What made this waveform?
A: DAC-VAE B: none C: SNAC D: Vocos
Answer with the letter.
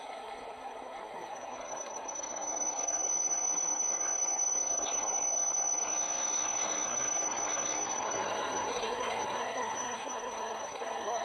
C